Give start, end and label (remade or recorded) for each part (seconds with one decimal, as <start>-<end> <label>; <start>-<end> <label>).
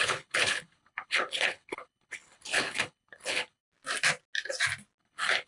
0.0-3.6 remade; 3.6-5.0 recorded; 5.0-5.5 remade